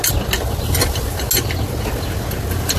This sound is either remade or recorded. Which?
recorded